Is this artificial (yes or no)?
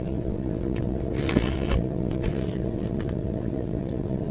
yes